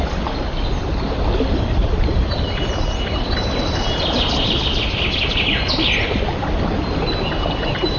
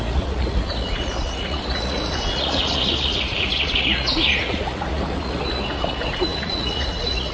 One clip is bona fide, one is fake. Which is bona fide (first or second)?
first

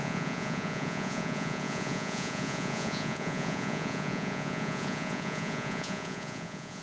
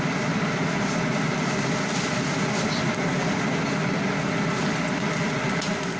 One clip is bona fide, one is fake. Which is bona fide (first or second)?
second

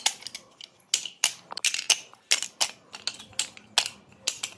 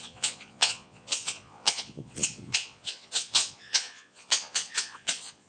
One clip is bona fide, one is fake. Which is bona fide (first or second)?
first